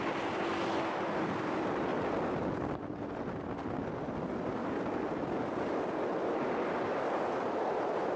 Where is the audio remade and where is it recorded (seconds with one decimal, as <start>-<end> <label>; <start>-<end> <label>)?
0.0-8.2 recorded